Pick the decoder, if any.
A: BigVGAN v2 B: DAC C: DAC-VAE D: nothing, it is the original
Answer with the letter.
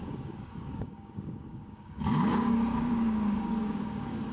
B